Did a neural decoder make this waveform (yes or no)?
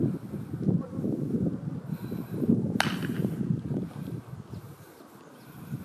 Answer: no